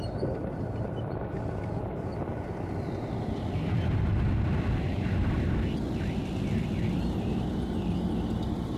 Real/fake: fake